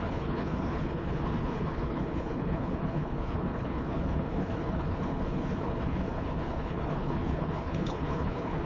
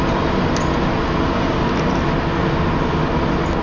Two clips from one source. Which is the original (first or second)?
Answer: second